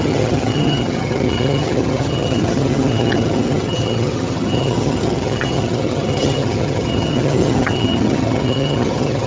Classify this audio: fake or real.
fake